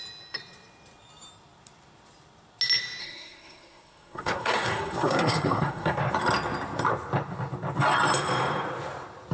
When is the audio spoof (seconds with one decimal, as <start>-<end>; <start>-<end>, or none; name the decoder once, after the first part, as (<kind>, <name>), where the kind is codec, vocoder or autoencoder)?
3.0-6.0 (codec, SNAC)